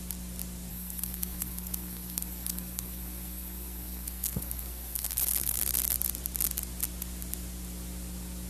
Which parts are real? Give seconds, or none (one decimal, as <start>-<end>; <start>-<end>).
0.0-0.7; 5.6-8.5